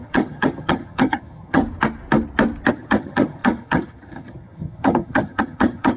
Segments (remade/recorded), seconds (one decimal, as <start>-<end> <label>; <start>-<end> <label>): 0.0-1.6 remade; 1.6-2.7 recorded; 2.7-6.0 remade